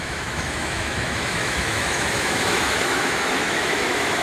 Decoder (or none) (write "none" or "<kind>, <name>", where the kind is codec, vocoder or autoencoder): autoencoder, DAC-VAE